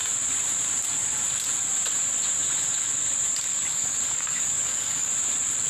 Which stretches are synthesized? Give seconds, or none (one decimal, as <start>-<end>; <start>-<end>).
3.5-5.1

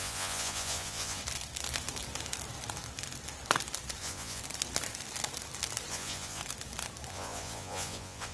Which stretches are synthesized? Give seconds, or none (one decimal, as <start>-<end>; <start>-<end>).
0.0-1.2; 4.0-4.4; 5.9-6.4; 7.1-8.3

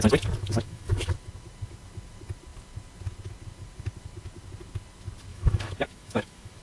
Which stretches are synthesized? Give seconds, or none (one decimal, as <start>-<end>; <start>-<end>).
0.4-1.1; 5.3-6.6